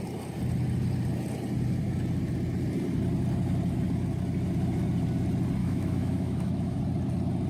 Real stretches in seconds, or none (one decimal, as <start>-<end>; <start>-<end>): 0.0-5.6; 6.8-7.5